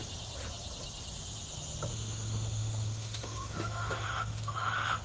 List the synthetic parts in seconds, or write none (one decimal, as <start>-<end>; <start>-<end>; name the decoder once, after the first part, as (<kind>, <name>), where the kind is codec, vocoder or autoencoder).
1.9-5.0 (autoencoder, DAC-VAE)